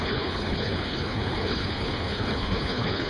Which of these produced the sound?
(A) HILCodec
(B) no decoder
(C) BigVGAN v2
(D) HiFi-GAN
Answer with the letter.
A